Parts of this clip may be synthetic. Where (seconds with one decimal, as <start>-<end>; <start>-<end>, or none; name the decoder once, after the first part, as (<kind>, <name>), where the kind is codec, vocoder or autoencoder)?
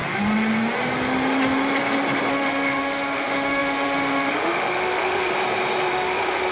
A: 2.3-5.3 (autoencoder, DAC-VAE); 5.9-6.5